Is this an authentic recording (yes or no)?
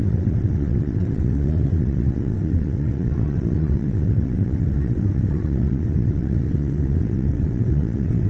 no